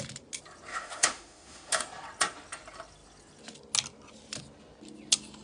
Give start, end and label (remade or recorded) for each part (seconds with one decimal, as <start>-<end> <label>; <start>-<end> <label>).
0.0-0.7 recorded; 0.7-1.8 remade; 1.8-5.4 recorded